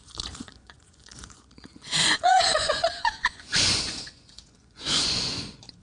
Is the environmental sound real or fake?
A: fake